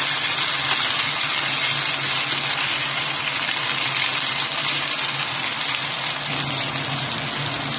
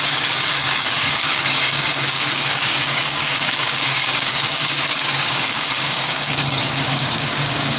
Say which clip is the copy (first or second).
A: second